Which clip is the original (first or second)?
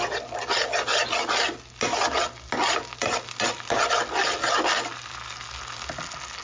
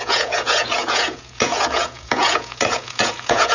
first